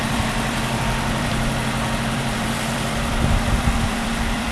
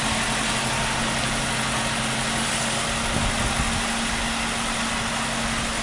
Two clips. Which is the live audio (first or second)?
second